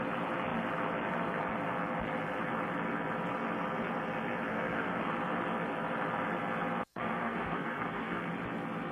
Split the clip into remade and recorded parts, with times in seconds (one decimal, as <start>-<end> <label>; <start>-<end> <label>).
0.0-4.5 recorded; 4.5-5.1 remade; 5.1-6.9 recorded; 6.9-8.3 remade; 8.3-8.9 recorded